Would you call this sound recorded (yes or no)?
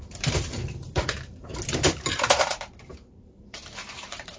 no